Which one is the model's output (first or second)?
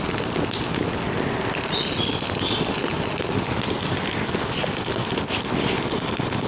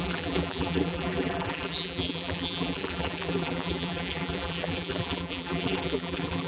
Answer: second